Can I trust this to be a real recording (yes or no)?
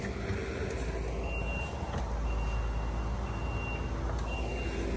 yes